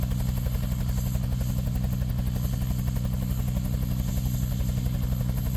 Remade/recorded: recorded